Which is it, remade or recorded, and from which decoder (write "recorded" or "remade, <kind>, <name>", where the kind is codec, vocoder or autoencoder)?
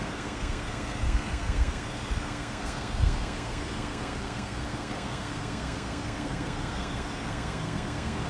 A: remade, codec, SNAC